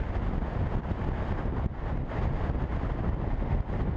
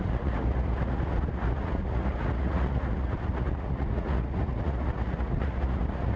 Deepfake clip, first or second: second